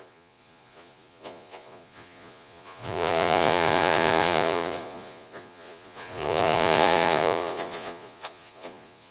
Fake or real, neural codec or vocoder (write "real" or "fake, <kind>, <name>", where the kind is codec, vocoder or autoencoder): fake, vocoder, Vocos